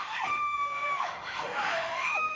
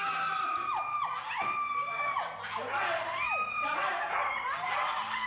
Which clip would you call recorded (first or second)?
second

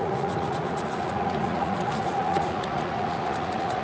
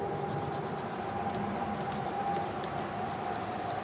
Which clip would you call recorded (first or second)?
second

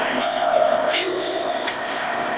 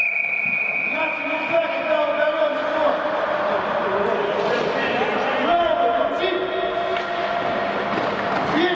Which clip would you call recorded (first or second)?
second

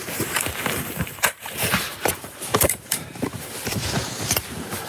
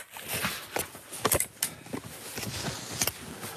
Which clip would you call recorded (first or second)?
second